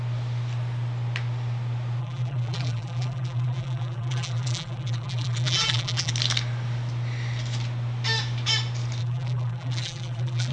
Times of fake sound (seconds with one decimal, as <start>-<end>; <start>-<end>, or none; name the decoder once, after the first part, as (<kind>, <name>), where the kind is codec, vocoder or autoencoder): 2.0-6.1 (vocoder, BigVGAN v2); 9.0-10.5